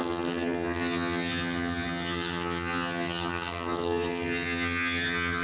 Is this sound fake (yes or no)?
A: yes